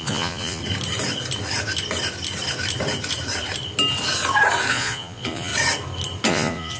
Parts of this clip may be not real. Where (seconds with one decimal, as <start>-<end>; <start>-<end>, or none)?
0.0-0.6; 4.7-5.5; 6.3-6.8